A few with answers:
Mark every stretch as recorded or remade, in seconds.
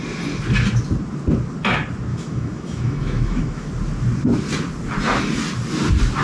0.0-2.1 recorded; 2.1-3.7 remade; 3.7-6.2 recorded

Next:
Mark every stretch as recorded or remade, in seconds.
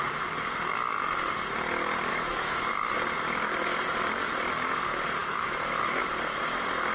0.0-2.1 recorded; 2.1-2.6 remade; 2.6-5.2 recorded; 5.2-6.0 remade; 6.0-6.9 recorded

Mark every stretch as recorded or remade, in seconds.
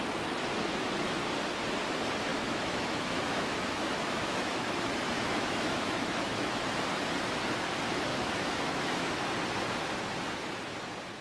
0.0-2.3 recorded; 2.3-6.6 remade; 6.6-8.1 recorded; 8.1-9.3 remade; 9.3-11.2 recorded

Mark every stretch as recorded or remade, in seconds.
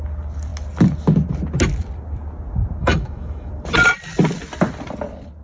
0.0-2.8 recorded; 2.8-3.5 remade; 3.5-5.4 recorded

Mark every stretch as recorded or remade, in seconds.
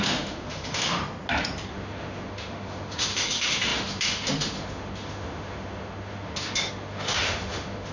0.0-1.0 remade; 1.0-1.7 recorded; 1.7-7.9 remade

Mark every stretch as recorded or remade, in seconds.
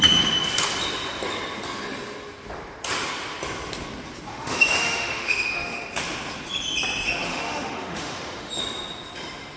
0.0-4.3 recorded; 4.3-5.9 remade; 5.9-7.3 recorded; 7.3-8.5 remade; 8.5-9.6 recorded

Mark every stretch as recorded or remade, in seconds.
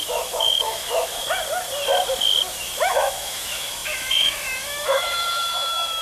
0.0-1.2 remade; 1.2-2.6 recorded; 2.6-6.0 remade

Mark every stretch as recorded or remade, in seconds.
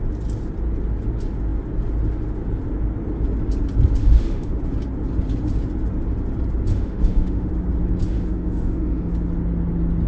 0.0-4.0 recorded; 4.0-4.6 remade; 4.6-6.7 recorded; 6.7-7.5 remade; 7.5-8.1 recorded; 8.1-9.1 remade; 9.1-10.1 recorded